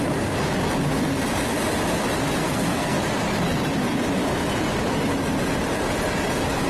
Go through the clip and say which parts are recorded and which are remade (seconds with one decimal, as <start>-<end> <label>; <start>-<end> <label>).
0.0-2.4 recorded; 2.4-3.0 remade; 3.0-6.7 recorded